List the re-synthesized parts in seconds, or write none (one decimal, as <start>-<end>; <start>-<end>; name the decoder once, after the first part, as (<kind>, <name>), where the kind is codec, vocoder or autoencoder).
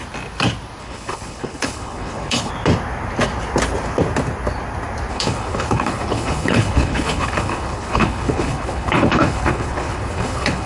0.8-2.5 (codec, HILCodec); 5.1-10.7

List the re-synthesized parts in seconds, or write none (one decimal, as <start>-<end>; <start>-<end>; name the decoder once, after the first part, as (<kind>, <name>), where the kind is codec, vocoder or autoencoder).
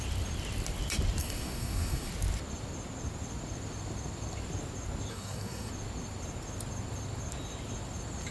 1.2-2.1 (codec, SNAC); 5.1-5.7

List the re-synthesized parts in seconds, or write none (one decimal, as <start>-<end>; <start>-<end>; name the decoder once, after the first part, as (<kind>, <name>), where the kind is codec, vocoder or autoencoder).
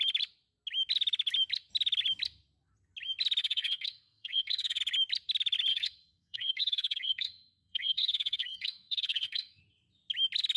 3.4-4.8 (codec, SNAC); 5.7-9.6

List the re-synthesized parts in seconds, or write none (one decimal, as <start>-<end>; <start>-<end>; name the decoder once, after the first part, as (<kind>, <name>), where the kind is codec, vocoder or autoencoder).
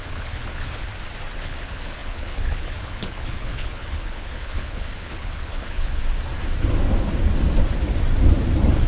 0.0-0.9 (codec, HILCodec); 1.4-6.0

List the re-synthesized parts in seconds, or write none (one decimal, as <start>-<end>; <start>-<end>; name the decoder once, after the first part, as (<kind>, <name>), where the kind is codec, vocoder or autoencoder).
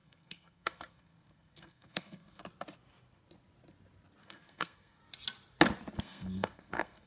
0.0-2.4 (codec, SNAC); 4.2-5.0; 6.0-7.1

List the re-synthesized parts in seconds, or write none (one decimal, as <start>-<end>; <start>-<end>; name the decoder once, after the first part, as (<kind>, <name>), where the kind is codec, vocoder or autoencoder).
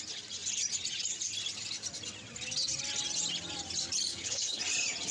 4.1-4.6 (codec, HILCodec)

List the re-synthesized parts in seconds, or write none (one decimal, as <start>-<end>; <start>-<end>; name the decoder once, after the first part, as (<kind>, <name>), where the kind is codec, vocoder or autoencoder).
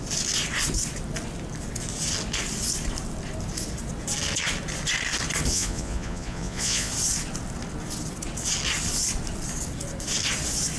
5.5-6.9 (vocoder, Vocos)